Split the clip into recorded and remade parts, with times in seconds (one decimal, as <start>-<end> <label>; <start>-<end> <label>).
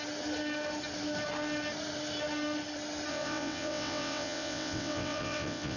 0.0-3.1 recorded; 3.1-5.8 remade